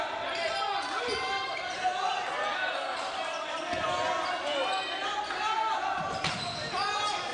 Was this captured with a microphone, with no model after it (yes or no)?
yes